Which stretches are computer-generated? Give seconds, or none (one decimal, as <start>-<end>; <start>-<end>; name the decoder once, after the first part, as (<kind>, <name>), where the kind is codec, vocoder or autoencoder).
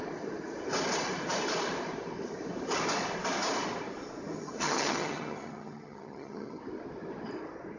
4.4-6.6 (vocoder, HiFi-GAN)